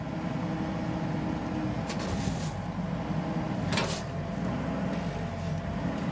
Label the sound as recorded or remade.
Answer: recorded